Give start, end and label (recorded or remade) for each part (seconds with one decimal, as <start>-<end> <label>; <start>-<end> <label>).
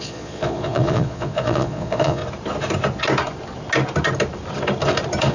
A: 0.0-2.2 remade; 2.2-5.3 recorded